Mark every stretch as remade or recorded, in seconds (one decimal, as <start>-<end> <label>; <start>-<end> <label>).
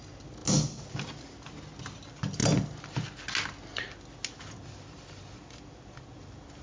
0.0-6.6 recorded